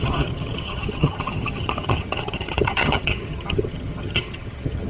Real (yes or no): no